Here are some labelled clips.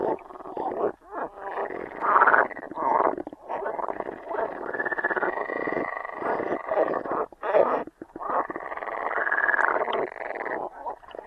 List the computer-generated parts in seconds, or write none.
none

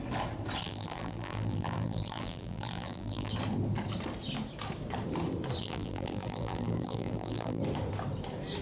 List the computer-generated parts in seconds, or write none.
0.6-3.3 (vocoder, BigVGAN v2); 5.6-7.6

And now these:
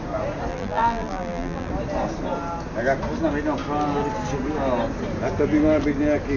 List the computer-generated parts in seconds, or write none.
0.5-1.7 (vocoder, BigVGAN v2)